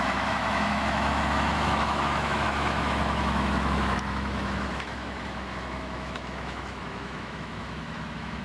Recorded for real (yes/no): no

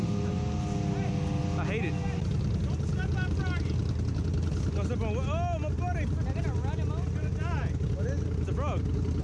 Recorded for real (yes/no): yes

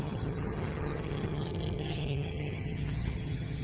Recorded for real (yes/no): no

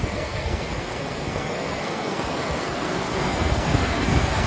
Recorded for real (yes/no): no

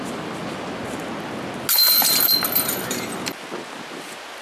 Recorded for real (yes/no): yes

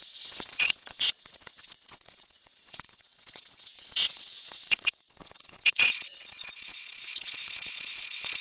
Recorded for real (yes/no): no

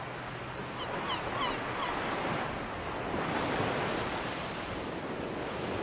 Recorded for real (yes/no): yes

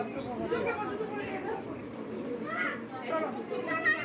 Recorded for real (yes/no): yes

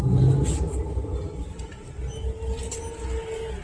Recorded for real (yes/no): yes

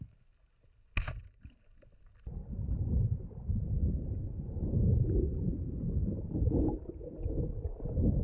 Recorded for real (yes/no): yes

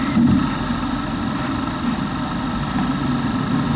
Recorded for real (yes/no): yes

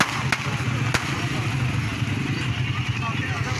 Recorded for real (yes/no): yes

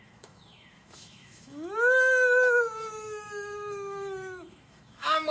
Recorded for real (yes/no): no